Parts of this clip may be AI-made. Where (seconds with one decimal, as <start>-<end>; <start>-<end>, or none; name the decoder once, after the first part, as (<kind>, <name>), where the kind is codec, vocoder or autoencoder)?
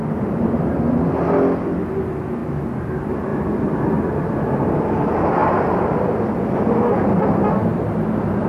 3.3-4.0 (vocoder, BigVGAN v2); 5.4-6.9; 7.7-8.5